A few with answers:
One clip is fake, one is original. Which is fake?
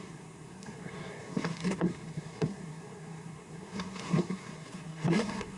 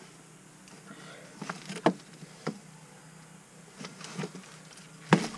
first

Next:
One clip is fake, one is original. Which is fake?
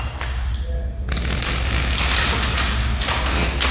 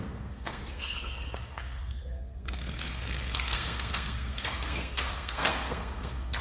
second